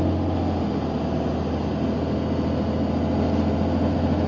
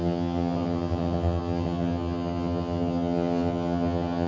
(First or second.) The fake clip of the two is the second